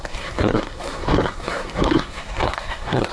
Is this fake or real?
fake